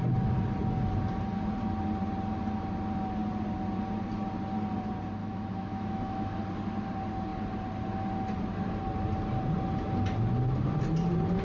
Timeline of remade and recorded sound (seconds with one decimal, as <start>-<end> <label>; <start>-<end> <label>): 0.0-5.2 recorded; 5.2-6.4 remade; 6.4-11.4 recorded

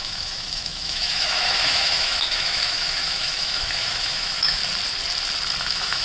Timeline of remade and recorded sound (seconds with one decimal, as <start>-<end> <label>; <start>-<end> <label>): 0.0-4.6 remade; 4.6-5.6 recorded; 5.6-6.0 remade

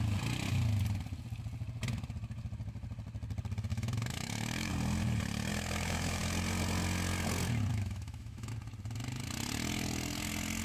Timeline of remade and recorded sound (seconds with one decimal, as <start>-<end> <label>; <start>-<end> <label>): 0.0-3.7 recorded; 3.7-4.7 remade; 4.7-5.5 recorded; 5.5-6.2 remade; 6.2-7.7 recorded; 7.7-8.5 remade; 8.5-10.6 recorded

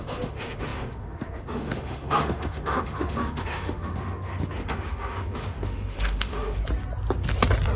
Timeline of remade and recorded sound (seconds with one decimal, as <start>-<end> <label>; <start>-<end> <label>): 0.0-6.6 remade; 6.6-7.8 recorded

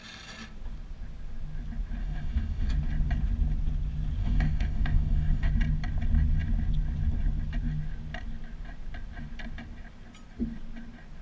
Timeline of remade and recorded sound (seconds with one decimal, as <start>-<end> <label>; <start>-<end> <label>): 0.0-2.0 recorded; 2.0-2.7 remade; 2.7-4.2 recorded; 4.2-5.5 remade; 5.5-11.2 recorded